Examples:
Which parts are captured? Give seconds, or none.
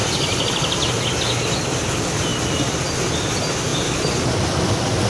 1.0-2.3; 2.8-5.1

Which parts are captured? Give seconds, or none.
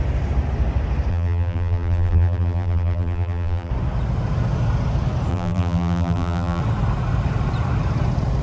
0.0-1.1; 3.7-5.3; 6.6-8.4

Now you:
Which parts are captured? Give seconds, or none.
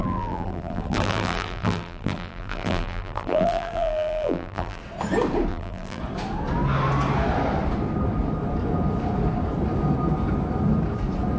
4.8-5.5; 6.0-11.4